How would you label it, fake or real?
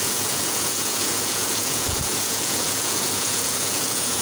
fake